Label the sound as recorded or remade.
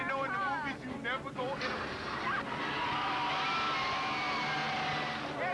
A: recorded